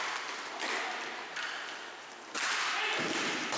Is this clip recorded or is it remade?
recorded